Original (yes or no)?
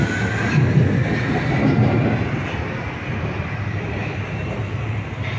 yes